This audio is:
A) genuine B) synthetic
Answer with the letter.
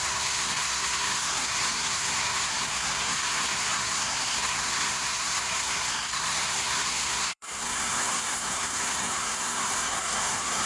B